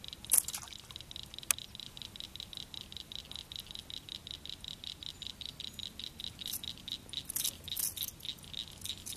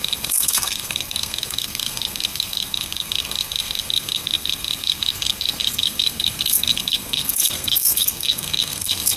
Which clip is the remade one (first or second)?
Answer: second